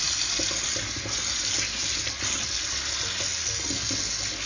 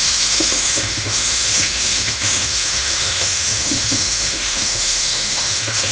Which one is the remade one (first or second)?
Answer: second